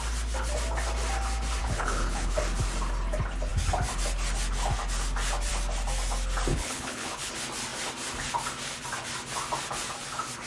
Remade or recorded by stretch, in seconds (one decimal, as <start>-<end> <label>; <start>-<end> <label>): 0.0-1.6 recorded; 1.6-2.4 remade; 2.4-6.5 recorded; 6.5-7.3 remade; 7.3-10.5 recorded